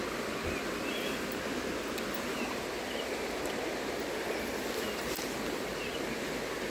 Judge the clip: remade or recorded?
recorded